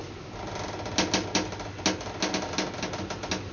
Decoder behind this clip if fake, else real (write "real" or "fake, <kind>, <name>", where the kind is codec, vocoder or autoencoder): real